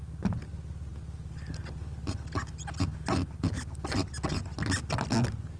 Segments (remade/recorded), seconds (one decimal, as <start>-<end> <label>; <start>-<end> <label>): 0.0-5.6 recorded